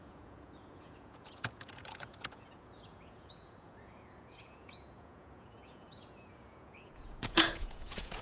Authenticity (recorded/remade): remade